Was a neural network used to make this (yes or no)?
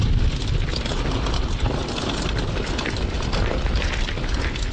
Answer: no